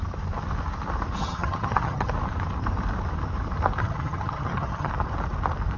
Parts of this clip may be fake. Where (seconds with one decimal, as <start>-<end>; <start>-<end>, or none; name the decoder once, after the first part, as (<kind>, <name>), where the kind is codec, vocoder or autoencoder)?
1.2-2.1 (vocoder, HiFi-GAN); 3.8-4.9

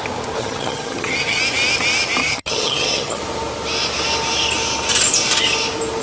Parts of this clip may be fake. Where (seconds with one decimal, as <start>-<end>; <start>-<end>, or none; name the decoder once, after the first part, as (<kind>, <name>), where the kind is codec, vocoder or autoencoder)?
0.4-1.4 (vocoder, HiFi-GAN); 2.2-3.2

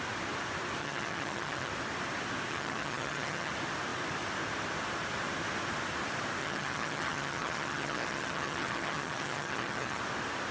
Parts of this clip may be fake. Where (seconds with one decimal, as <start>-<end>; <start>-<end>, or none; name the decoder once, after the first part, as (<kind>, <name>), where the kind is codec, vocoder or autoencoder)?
0.8-1.7 (vocoder, HiFi-GAN); 2.5-3.5; 6.4-10.0

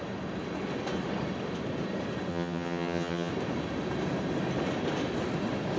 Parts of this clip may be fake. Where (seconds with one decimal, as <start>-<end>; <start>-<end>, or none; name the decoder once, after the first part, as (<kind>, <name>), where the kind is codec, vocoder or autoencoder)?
2.3-3.3 (vocoder, HiFi-GAN)